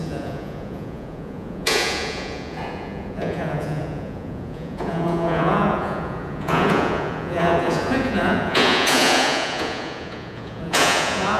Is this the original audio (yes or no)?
no